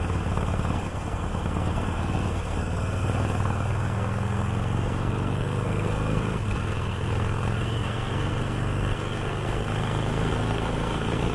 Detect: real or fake fake